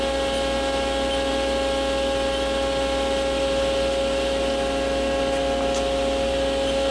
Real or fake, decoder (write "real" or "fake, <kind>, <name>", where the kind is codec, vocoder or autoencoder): real